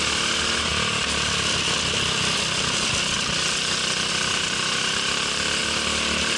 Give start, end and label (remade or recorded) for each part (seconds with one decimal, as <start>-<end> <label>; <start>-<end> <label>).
0.0-0.7 remade; 0.7-4.1 recorded; 4.1-5.6 remade; 5.6-6.4 recorded